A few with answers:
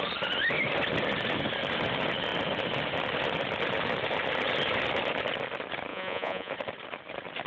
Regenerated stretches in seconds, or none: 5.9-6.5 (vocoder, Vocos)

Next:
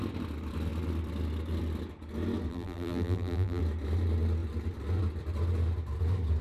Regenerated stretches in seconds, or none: 2.5-3.6 (vocoder, BigVGAN v2)

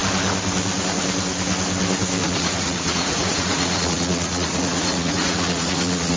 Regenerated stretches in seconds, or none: 2.2-6.2 (vocoder, Vocos)

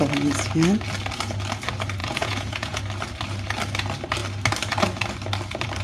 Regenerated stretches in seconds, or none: 2.0-2.8 (vocoder, Vocos)

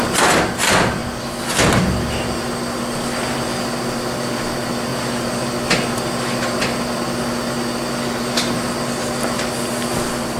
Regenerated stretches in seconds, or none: none

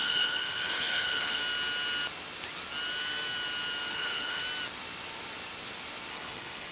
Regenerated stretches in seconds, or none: 0.0-1.4 (codec, HILCodec); 3.9-4.4; 6.1-6.7

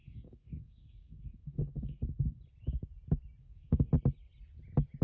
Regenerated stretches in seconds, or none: 0.0-2.4 (codec, DAC); 3.4-3.9